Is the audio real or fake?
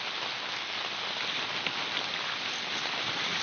real